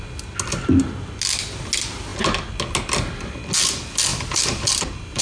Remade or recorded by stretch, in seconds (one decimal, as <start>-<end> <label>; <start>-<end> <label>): 0.0-4.1 recorded; 4.1-5.2 remade